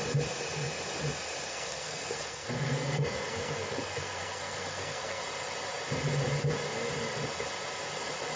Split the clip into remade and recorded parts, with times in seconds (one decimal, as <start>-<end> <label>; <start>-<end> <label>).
0.0-1.5 recorded; 1.5-5.2 remade; 5.2-8.4 recorded